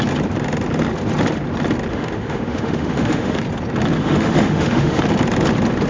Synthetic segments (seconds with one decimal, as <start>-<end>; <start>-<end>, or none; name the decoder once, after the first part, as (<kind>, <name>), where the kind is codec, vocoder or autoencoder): 1.9-3.4 (autoencoder, DAC-VAE); 4.0-5.0